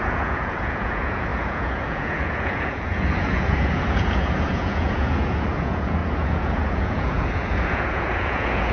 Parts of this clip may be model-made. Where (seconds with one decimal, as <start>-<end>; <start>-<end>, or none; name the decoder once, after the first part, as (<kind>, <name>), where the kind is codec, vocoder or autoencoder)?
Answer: 0.0-8.7 (vocoder, Vocos)